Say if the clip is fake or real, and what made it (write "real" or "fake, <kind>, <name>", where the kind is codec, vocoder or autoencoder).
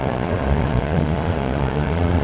fake, vocoder, Vocos